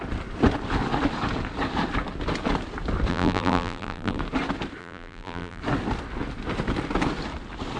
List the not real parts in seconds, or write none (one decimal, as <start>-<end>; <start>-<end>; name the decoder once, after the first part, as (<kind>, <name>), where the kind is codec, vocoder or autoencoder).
3.1-4.2 (vocoder, BigVGAN v2); 4.8-5.6